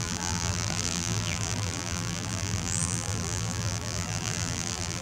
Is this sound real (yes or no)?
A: no